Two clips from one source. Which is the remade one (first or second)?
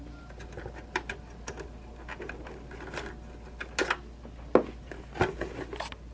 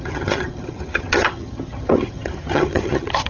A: second